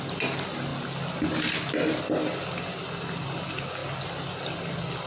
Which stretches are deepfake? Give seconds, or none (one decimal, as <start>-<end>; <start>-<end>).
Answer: none